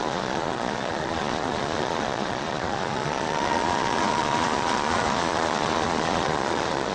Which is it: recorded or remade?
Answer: remade